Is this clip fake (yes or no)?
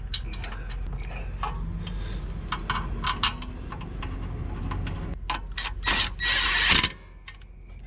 no